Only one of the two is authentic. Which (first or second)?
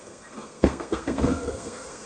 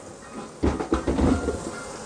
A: second